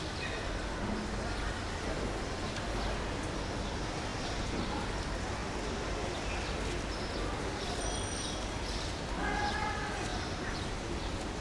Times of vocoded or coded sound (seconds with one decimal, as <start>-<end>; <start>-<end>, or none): 10.1-11.4